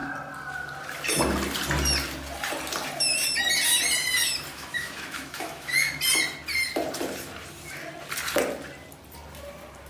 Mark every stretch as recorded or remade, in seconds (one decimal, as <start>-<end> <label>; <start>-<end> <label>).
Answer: 0.0-4.5 recorded; 4.5-6.0 remade; 6.0-9.9 recorded